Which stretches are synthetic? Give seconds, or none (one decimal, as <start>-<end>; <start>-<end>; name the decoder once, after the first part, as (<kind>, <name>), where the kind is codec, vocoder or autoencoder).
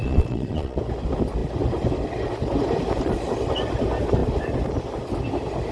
0.0-0.8 (vocoder, Vocos)